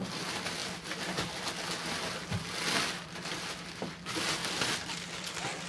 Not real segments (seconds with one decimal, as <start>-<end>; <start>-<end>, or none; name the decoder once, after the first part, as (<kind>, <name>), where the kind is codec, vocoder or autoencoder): none